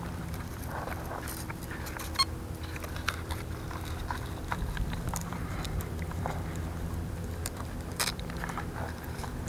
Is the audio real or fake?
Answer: fake